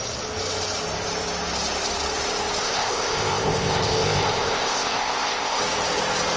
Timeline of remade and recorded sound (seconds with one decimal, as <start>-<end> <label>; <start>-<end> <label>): 0.0-2.6 recorded; 2.6-5.6 remade; 5.6-6.4 recorded